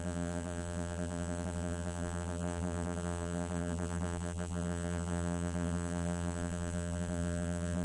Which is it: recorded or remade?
remade